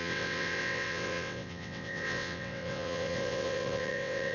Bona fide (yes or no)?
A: no